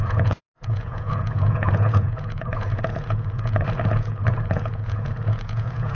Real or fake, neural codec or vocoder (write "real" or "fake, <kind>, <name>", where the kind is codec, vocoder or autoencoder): fake, vocoder, Vocos